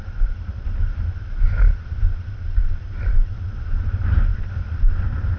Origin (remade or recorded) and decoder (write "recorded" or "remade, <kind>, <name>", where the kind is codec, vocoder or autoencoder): recorded